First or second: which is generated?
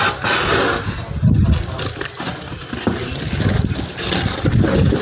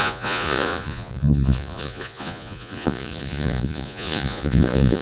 second